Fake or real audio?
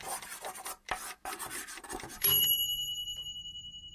fake